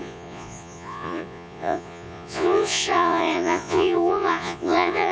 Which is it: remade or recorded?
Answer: remade